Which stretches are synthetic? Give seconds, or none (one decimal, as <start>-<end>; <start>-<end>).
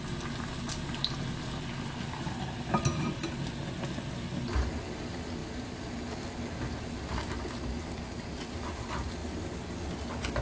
none